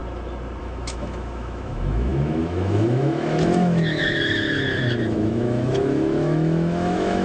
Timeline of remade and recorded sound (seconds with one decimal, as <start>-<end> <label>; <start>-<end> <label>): 0.0-0.6 recorded; 0.6-7.2 remade